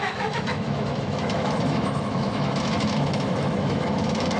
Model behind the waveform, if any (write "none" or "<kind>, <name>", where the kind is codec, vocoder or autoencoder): autoencoder, DAC-VAE